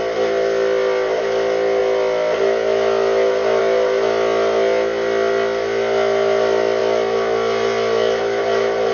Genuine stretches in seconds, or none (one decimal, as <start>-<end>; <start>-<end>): 0.0-8.9